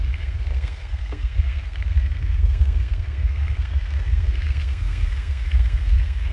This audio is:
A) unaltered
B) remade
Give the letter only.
B